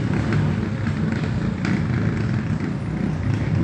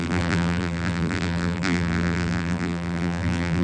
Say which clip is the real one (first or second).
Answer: first